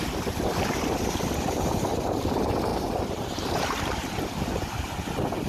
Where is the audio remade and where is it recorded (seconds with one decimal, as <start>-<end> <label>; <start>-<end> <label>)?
0.0-2.7 recorded; 2.7-4.4 remade; 4.4-5.5 recorded